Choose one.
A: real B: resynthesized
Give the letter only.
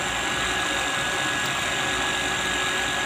A